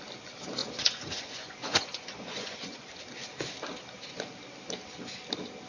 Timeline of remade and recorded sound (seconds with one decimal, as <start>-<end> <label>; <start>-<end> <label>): 0.0-0.6 recorded; 0.6-3.0 remade; 3.0-5.7 recorded